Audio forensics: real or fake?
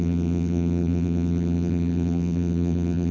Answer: fake